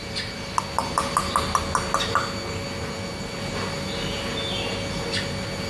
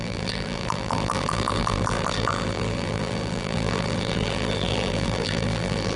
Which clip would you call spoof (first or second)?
second